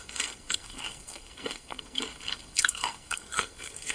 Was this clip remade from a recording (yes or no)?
yes